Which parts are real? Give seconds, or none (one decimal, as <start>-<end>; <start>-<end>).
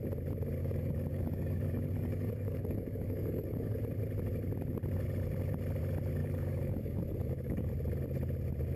0.0-0.6; 3.8-6.2; 7.7-8.8